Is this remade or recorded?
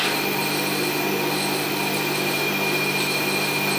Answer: recorded